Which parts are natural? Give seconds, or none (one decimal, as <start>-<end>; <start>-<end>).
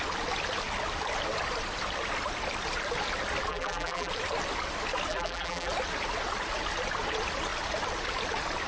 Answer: 0.0-3.5; 4.1-5.1; 5.7-8.7